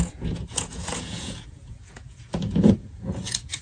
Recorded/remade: remade